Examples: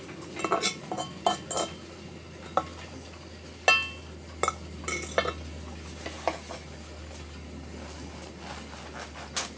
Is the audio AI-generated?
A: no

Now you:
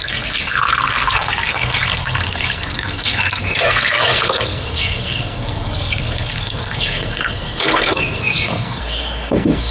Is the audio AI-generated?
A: yes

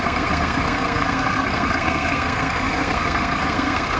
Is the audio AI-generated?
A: yes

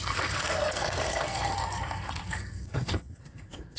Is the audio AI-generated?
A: yes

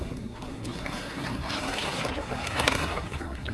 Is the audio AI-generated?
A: yes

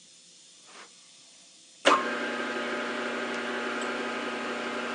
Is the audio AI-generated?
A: no